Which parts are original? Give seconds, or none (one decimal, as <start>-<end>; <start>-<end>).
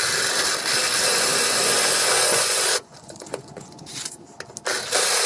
0.0-1.1; 4.3-5.3